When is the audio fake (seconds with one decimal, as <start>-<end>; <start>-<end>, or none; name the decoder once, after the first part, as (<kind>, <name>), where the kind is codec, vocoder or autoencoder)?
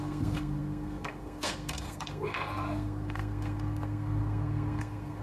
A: 0.0-5.2 (codec, SNAC)